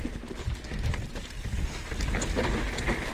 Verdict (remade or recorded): recorded